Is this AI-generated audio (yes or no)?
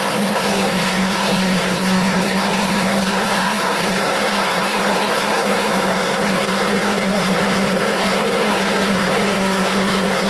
yes